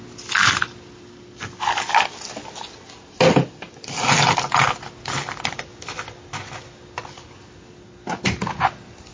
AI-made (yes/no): no